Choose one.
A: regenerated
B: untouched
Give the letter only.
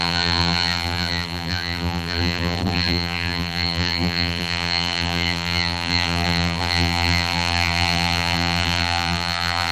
A